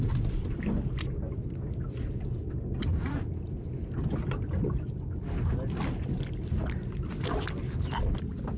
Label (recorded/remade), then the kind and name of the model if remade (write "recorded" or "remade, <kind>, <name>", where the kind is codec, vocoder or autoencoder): recorded